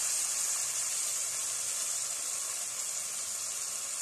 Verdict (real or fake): real